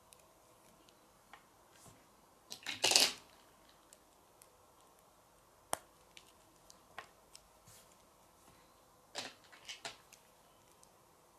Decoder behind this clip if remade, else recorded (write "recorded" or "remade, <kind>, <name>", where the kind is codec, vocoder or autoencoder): recorded